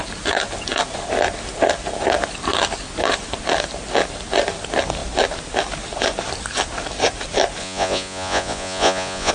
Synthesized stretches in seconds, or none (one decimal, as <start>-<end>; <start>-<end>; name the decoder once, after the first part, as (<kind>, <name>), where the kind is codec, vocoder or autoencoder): 7.6-9.3 (vocoder, Vocos)